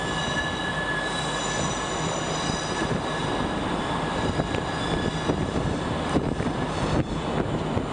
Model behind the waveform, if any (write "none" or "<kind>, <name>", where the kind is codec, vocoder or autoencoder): none